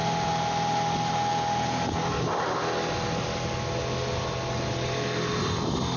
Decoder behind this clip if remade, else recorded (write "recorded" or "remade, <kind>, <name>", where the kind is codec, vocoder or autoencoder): recorded